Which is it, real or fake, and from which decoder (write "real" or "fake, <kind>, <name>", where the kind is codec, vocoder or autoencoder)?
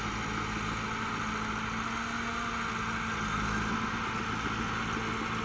real